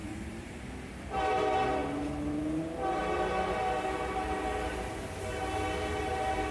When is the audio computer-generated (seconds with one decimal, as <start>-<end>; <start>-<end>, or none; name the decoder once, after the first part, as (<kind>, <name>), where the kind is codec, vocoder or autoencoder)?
0.0-0.9 (vocoder, BigVGAN v2)